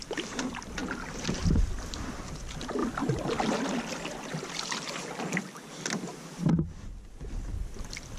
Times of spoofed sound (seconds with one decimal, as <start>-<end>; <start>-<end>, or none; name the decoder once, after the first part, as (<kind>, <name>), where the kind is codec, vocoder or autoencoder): none